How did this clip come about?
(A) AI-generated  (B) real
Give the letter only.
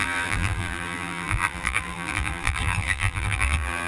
A